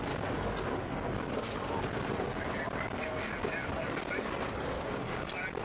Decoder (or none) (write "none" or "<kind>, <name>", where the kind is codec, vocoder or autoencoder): none